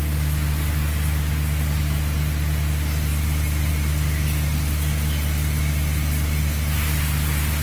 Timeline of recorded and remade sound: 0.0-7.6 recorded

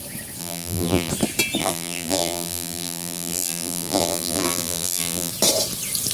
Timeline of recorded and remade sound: 0.0-0.4 recorded; 0.4-1.1 remade; 1.1-1.6 recorded; 1.6-5.3 remade; 5.3-6.1 recorded